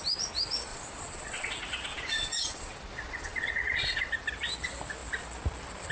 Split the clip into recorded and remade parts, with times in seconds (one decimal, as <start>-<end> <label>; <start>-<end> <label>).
0.0-0.7 recorded; 0.7-1.5 remade; 1.5-1.9 recorded; 1.9-4.1 remade; 4.1-5.9 recorded